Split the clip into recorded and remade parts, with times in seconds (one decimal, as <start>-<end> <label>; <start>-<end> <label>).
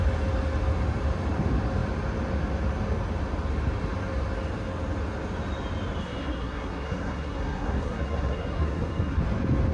0.0-6.0 recorded; 6.0-9.2 remade; 9.2-9.7 recorded